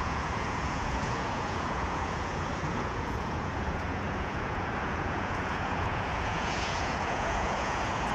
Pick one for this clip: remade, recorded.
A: remade